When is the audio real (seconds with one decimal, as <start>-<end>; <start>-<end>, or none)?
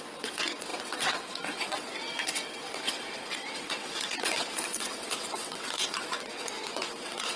none